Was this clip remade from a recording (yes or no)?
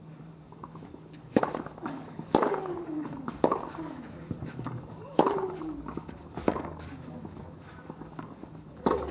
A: yes